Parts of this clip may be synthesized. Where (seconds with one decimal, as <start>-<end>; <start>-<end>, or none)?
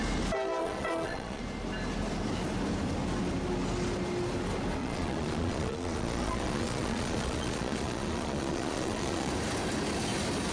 0.6-1.4; 4.8-9.3